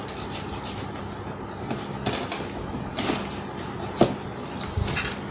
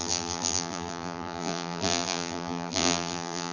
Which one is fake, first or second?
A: second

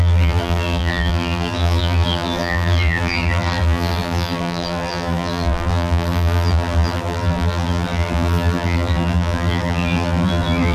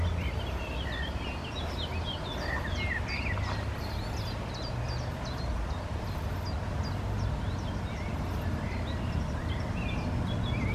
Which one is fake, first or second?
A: first